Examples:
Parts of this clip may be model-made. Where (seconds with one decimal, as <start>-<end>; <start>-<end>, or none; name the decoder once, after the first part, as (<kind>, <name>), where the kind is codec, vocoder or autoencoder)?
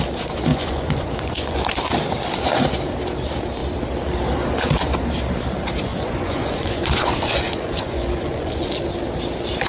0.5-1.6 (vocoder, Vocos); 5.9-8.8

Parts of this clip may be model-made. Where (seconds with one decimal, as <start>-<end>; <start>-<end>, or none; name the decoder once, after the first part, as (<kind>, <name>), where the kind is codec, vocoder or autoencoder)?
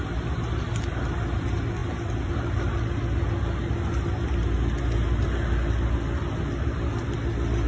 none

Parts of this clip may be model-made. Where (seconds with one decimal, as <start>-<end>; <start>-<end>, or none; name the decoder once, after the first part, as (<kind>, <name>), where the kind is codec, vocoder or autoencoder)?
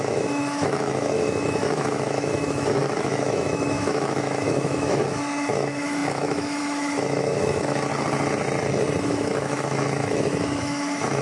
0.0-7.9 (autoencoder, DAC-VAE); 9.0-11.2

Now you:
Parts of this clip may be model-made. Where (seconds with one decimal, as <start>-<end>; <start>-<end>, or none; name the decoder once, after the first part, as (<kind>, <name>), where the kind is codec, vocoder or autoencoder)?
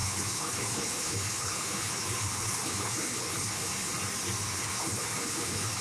0.0-3.9 (codec, HILCodec); 4.4-5.8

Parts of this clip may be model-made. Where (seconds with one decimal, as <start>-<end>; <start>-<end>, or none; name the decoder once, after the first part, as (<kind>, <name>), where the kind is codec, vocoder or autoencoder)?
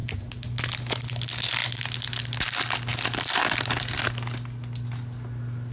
none